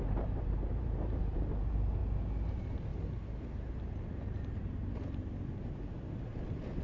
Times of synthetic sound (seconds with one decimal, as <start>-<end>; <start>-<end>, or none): 0.0-2.0; 2.5-2.9; 3.5-6.8